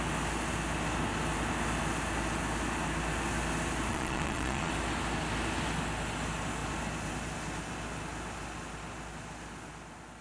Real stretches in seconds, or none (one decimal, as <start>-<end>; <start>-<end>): 0.0-3.9; 4.7-10.2

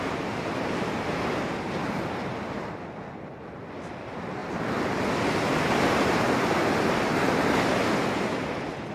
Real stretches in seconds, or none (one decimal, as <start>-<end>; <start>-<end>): 0.0-8.9

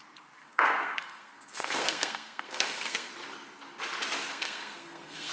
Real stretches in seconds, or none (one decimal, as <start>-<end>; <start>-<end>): 0.0-0.4; 3.1-4.3

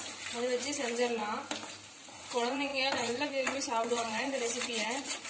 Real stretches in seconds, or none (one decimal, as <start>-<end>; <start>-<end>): 1.2-1.9

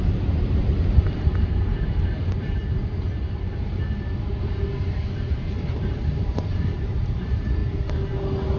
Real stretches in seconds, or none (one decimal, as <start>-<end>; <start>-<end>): 2.6-5.8; 7.6-8.6

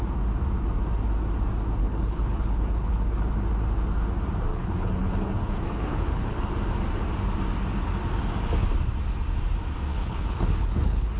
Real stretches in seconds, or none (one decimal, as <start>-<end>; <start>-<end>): 0.0-1.8; 3.3-4.5; 6.5-9.9

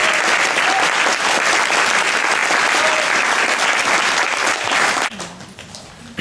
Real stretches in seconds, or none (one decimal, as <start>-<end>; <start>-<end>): 0.0-6.2

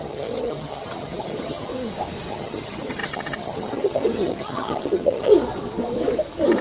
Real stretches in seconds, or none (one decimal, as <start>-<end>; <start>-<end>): 1.7-2.3; 5.3-6.6